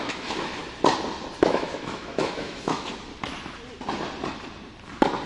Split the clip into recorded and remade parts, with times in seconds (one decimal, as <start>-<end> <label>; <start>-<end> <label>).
0.0-0.6 remade; 0.6-1.4 recorded; 1.4-2.9 remade; 2.9-5.3 recorded